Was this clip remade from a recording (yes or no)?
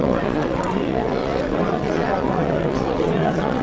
yes